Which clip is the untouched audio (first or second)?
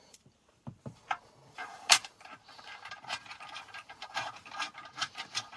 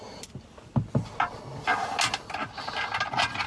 second